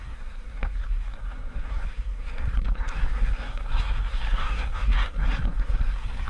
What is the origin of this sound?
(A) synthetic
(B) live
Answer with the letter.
A